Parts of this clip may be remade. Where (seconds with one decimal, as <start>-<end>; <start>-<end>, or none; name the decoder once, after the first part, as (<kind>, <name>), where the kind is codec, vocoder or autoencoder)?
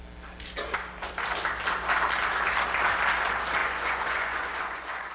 3.6-5.1 (vocoder, Vocos)